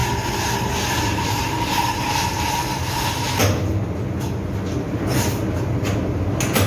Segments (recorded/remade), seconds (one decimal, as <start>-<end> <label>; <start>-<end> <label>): 0.0-6.7 recorded